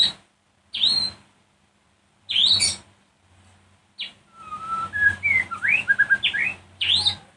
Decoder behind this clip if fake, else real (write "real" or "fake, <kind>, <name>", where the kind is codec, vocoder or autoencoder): real